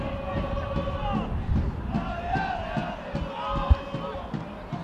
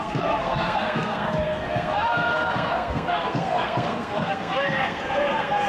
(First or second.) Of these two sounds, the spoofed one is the second